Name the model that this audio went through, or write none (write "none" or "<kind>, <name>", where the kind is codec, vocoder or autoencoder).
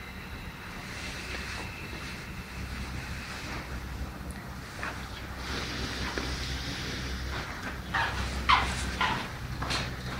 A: none